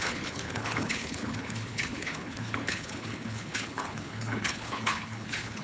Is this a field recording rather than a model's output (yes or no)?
no